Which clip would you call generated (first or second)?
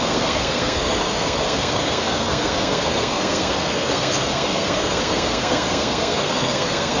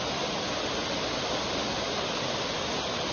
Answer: first